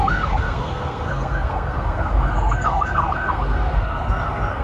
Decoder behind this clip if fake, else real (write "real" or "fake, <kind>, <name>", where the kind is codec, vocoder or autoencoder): fake, codec, SNAC